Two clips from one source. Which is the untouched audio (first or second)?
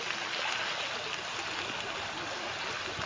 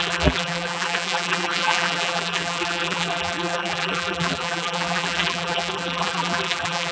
first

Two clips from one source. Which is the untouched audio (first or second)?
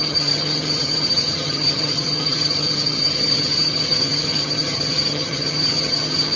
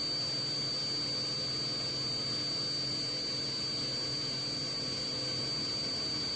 second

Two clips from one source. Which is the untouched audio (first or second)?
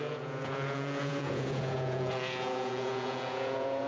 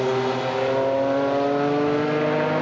second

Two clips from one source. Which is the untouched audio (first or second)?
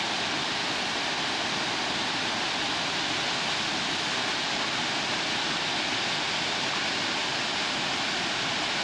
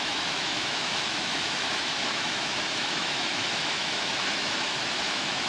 first